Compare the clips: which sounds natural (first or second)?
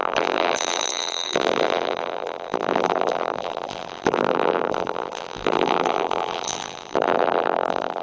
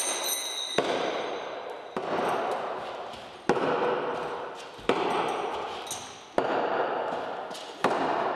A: second